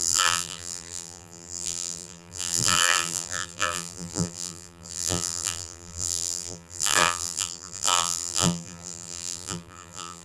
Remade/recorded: remade